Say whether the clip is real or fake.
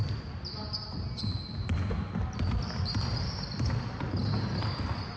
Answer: real